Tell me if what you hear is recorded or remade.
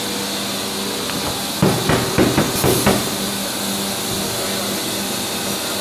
recorded